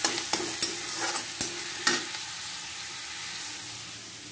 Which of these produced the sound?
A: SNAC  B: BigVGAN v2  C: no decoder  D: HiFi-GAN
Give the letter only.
C